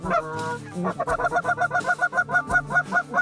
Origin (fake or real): real